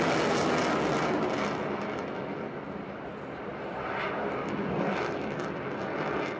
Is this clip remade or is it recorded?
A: recorded